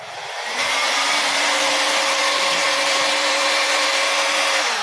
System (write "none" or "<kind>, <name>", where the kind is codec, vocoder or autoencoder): vocoder, BigVGAN v2